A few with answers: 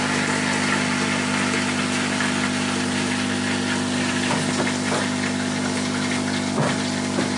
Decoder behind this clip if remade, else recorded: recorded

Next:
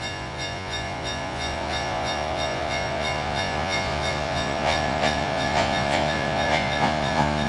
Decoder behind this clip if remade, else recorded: remade, vocoder, Vocos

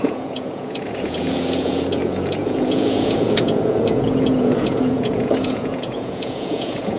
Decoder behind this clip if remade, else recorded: remade, vocoder, Vocos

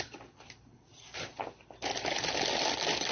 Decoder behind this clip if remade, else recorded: recorded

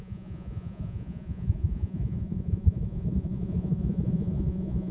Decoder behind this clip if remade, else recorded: remade, vocoder, Vocos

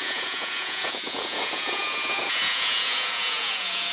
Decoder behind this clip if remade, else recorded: remade, vocoder, Vocos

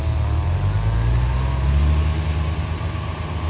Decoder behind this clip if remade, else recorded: recorded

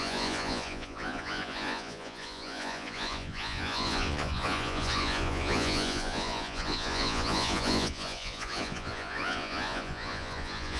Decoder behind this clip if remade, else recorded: remade, vocoder, Vocos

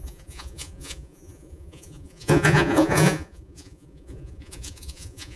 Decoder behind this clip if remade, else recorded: remade, vocoder, Vocos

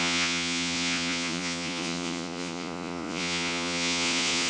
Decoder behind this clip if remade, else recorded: remade, vocoder, Vocos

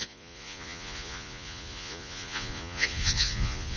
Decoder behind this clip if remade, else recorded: remade, vocoder, Vocos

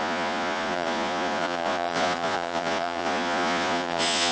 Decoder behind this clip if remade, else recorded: remade, vocoder, Vocos